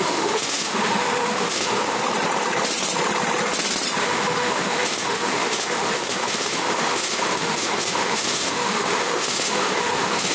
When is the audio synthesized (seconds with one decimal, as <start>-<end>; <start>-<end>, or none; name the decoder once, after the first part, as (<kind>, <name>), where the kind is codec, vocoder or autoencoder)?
0.0-2.0 (autoencoder, DAC-VAE); 4.0-10.3